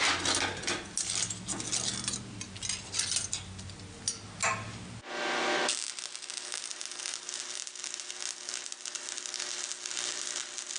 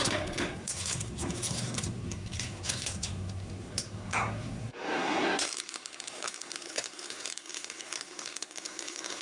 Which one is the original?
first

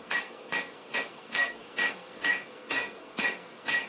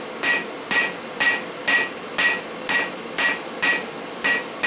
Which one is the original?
second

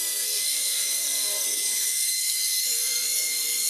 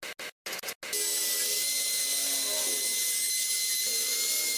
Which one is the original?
second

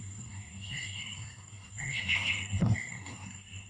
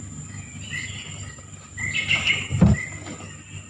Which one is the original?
second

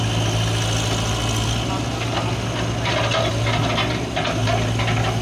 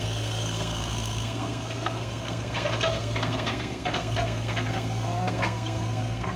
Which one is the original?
first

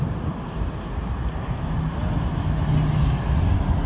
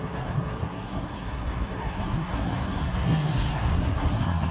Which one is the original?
first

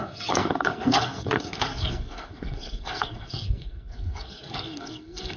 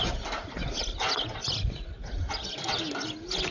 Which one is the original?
second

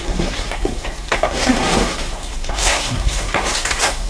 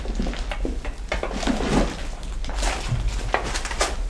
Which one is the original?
second